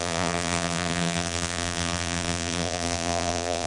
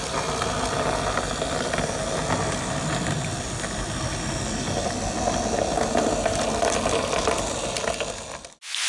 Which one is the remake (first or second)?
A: first